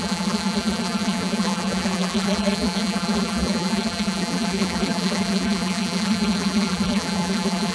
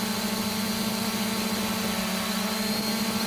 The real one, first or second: second